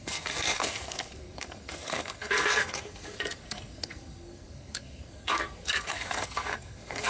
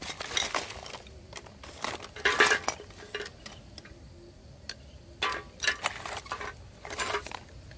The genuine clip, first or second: second